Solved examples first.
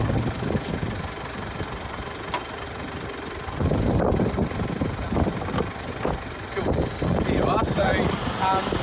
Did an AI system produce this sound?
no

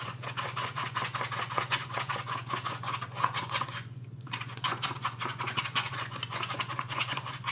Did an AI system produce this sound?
yes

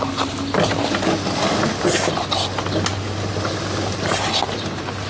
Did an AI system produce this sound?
no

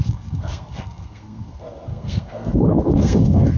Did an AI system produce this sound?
yes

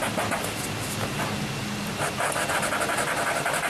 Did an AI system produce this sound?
no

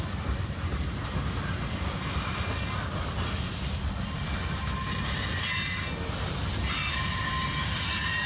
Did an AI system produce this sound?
no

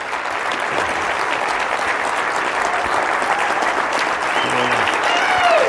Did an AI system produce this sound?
no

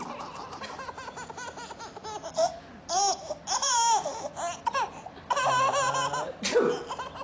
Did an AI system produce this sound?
no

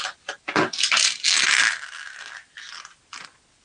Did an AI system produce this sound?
no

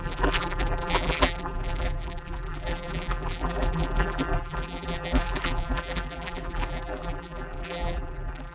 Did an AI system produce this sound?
yes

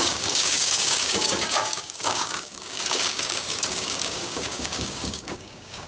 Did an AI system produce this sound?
yes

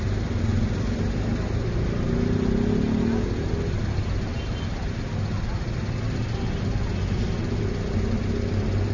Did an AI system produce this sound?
no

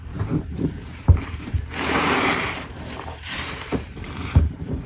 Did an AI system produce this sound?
yes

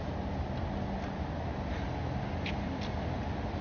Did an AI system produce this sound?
no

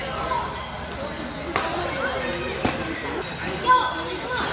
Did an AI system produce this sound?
no